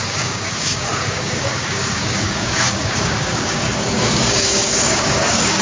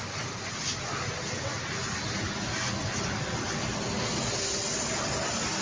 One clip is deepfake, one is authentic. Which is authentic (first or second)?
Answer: second